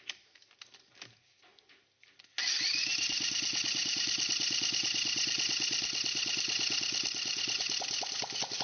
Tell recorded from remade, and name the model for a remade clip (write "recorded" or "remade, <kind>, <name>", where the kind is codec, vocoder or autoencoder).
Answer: recorded